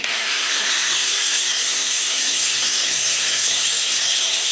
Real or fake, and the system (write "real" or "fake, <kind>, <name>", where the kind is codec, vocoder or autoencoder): fake, codec, SNAC